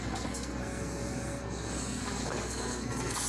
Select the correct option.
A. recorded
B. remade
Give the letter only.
B